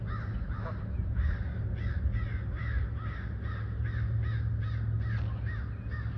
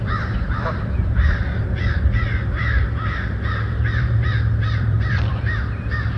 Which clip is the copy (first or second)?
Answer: second